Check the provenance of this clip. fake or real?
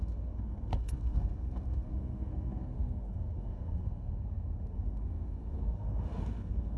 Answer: fake